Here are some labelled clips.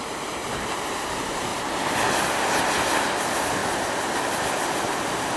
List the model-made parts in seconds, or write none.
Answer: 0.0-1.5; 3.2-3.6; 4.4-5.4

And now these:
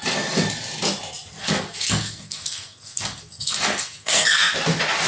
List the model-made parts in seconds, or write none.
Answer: 1.4-4.5

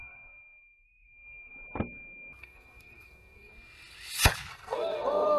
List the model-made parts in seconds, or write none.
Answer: 0.0-1.5; 2.4-3.5; 4.5-5.4